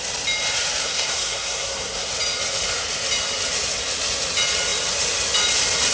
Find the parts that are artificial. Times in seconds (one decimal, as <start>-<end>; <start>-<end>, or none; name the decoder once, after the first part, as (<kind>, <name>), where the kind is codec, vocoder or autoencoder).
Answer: 0.8-2.1 (codec, SNAC)